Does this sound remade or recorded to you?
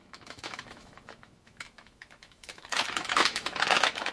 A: remade